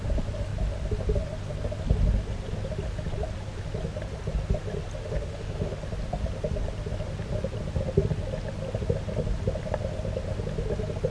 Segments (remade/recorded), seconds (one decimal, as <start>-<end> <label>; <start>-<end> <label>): 0.0-5.0 recorded; 5.0-5.8 remade; 5.8-11.1 recorded